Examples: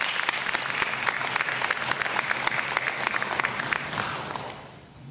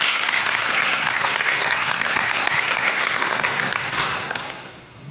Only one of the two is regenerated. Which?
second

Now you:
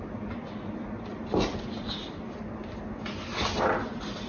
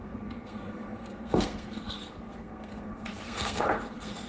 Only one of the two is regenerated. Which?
second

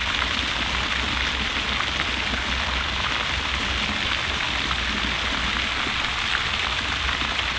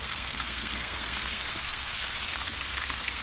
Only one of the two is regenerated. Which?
second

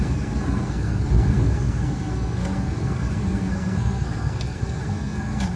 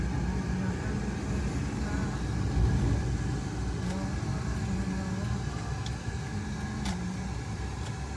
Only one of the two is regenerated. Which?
first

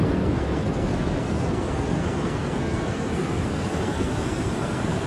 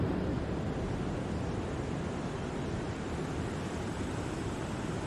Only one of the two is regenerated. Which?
first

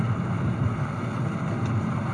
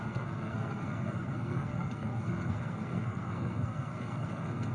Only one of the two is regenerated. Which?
second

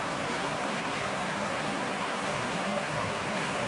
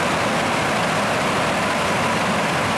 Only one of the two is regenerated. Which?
first